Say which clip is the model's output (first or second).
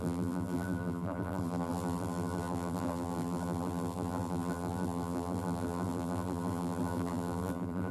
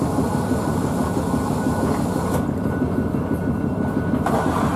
first